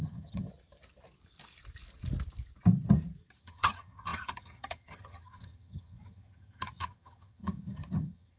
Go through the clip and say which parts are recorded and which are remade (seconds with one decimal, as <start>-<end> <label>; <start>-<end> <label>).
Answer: 0.0-0.5 remade; 0.5-3.4 recorded; 3.4-8.4 remade